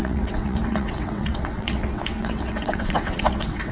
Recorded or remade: remade